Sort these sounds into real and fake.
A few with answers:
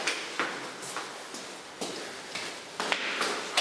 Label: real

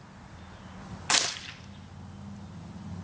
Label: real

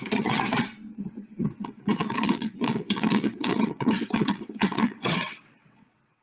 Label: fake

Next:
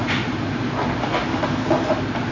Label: real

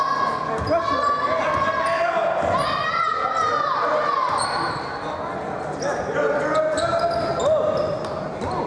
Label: real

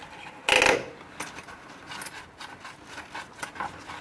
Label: real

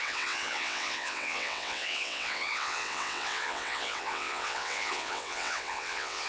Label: fake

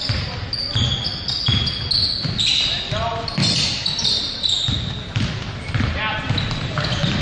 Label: real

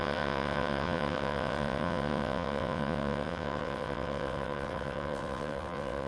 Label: fake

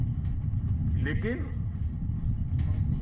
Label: real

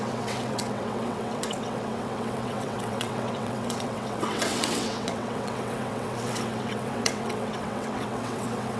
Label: fake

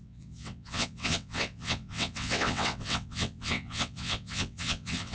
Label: fake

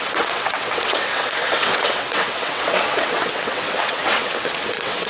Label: fake